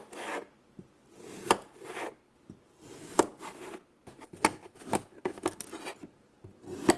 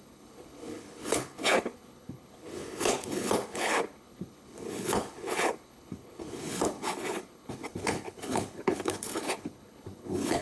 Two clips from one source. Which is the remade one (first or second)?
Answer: second